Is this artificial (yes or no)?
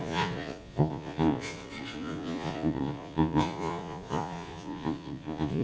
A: yes